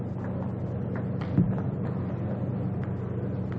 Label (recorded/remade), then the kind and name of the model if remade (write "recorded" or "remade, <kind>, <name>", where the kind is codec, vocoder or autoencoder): recorded